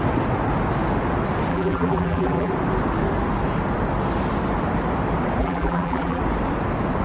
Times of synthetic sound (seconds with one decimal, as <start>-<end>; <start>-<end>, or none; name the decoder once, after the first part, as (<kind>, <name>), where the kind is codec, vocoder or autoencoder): 1.5-2.5 (vocoder, BigVGAN v2); 5.4-6.2